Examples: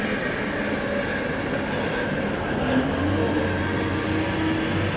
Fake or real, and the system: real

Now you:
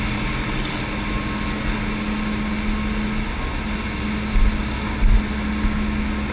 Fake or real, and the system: real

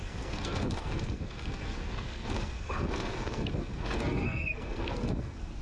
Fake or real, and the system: fake, codec, SNAC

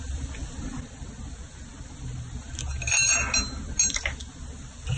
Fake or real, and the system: real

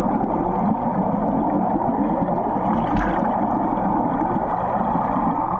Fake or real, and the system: real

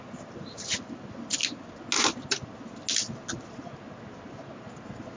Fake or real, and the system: real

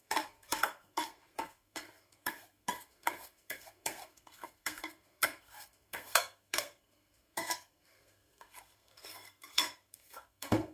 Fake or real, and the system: fake, codec, SNAC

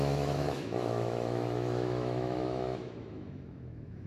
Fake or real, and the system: fake, autoencoder, DAC-VAE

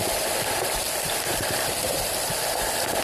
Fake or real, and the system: fake, vocoder, BigVGAN v2